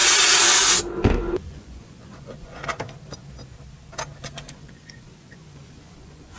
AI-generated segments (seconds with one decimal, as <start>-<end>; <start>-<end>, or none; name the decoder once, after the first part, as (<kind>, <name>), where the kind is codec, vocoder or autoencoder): 0.9-2.6 (vocoder, Vocos); 4.2-6.4